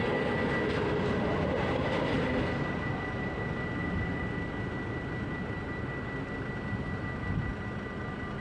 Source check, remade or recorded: recorded